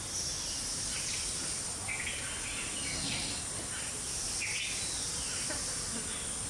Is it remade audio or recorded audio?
recorded